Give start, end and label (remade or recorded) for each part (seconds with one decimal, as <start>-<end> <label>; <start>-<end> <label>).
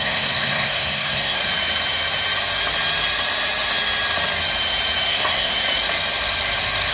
0.0-1.4 remade; 1.4-5.1 recorded; 5.1-5.5 remade; 5.5-6.9 recorded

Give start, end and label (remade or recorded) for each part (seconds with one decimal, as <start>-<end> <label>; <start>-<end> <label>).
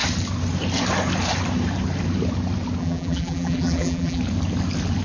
0.0-2.8 recorded; 2.8-4.2 remade; 4.2-5.0 recorded